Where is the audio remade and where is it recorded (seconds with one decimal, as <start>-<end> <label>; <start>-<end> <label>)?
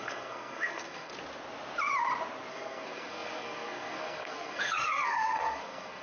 0.0-1.1 remade; 1.1-2.5 recorded; 2.5-6.0 remade